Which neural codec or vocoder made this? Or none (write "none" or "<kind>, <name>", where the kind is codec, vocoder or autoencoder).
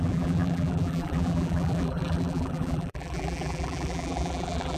vocoder, BigVGAN v2